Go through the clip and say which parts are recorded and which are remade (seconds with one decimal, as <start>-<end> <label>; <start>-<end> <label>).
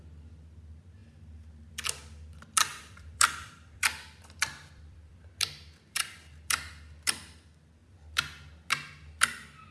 0.0-2.7 recorded; 2.7-5.2 remade; 5.2-9.7 recorded